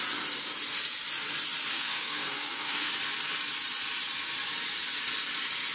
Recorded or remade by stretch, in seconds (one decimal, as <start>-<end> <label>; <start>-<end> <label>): 0.0-1.7 recorded; 1.7-2.9 remade; 2.9-5.7 recorded